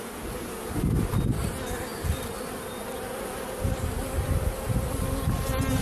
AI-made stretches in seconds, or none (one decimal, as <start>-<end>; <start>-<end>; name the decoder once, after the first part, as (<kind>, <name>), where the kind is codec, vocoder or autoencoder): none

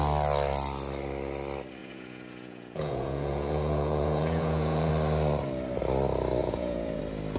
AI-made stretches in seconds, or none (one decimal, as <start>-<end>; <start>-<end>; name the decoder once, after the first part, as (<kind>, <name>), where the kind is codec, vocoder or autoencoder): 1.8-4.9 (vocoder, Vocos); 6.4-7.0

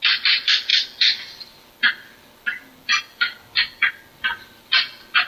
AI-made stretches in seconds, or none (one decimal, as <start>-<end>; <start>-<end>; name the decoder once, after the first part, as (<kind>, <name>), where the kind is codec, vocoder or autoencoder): none